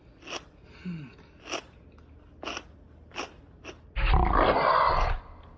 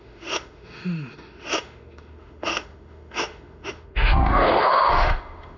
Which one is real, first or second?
first